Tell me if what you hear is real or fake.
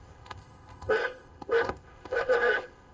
fake